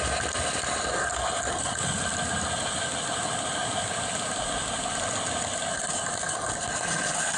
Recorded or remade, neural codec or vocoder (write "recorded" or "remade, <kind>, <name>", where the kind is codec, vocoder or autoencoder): recorded